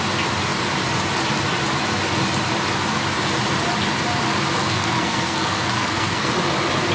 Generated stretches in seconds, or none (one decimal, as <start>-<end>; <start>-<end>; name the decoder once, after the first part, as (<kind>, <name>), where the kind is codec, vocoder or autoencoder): 4.6-6.3 (codec, SNAC)